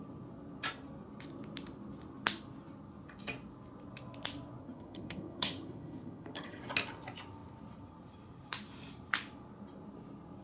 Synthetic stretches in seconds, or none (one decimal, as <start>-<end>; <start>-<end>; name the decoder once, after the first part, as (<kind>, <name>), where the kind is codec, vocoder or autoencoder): 4.6-6.6 (vocoder, HiFi-GAN)